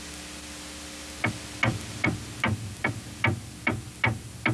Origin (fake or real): real